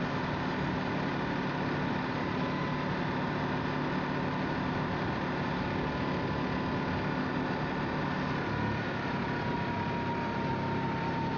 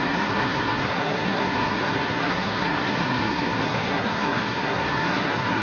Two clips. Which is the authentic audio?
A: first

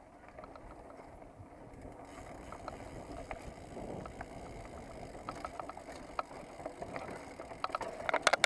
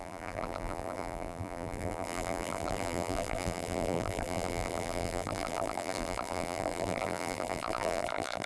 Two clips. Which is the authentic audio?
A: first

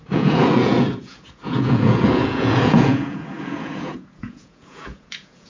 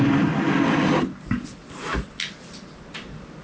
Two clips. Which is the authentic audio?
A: second